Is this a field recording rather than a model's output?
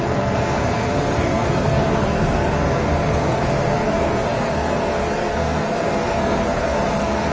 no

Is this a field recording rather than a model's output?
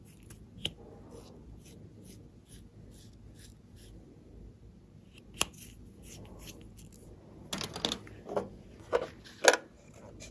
yes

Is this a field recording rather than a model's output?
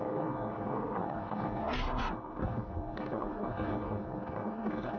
no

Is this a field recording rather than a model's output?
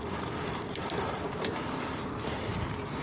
yes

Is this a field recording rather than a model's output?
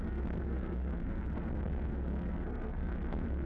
no